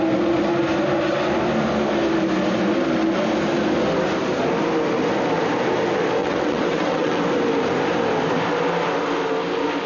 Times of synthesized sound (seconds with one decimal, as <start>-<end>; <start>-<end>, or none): 6.2-7.2